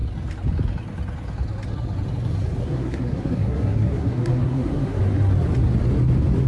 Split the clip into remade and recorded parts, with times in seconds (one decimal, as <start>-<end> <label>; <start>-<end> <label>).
0.0-2.6 recorded; 2.6-5.0 remade; 5.0-6.5 recorded